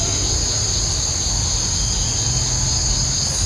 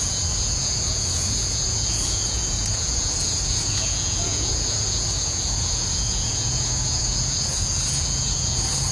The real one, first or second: first